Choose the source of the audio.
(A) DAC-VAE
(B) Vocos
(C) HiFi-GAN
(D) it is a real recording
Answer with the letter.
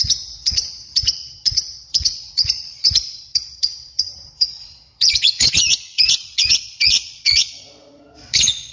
B